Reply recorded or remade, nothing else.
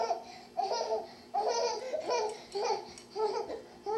recorded